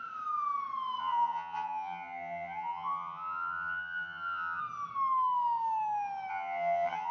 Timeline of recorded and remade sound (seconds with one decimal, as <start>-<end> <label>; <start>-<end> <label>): 0.0-1.0 recorded; 1.0-4.6 remade; 4.6-6.3 recorded; 6.3-7.1 remade